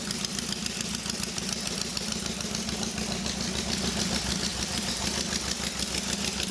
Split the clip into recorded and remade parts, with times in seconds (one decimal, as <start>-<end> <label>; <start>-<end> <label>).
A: 0.0-4.5 recorded; 4.5-5.1 remade; 5.1-6.5 recorded